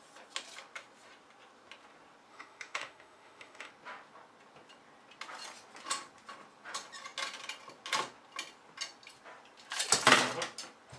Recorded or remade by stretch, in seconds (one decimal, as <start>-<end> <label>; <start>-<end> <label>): 0.0-2.3 recorded; 2.3-3.7 remade; 3.7-11.0 recorded